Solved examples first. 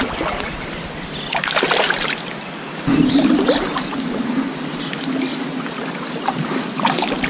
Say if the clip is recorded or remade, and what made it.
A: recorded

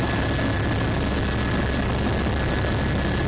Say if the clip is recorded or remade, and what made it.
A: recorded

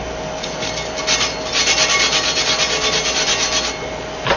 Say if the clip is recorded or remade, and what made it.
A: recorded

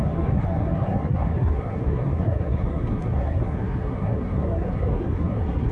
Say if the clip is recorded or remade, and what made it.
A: remade, codec, SNAC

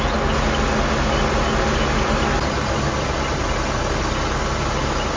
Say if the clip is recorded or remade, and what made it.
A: recorded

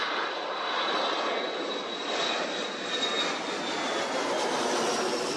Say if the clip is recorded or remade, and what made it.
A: recorded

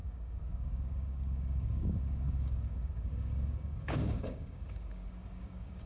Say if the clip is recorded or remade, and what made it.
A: remade, codec, DAC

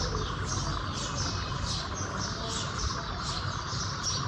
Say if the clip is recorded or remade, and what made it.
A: recorded